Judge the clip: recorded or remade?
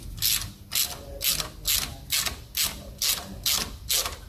recorded